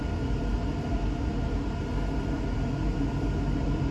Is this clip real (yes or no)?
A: yes